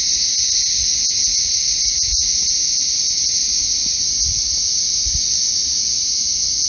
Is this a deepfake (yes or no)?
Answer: no